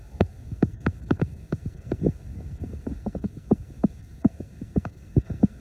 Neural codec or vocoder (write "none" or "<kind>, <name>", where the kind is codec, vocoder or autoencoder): codec, SNAC